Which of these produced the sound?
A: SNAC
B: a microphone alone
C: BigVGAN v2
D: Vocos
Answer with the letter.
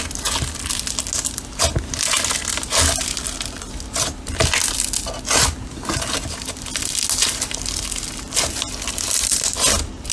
B